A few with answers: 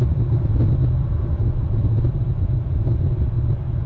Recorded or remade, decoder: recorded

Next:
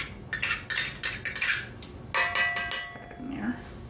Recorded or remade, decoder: recorded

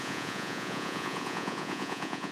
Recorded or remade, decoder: remade, vocoder, Vocos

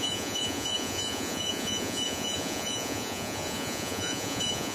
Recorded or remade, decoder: remade, vocoder, Vocos